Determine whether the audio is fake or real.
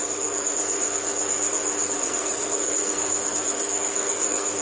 fake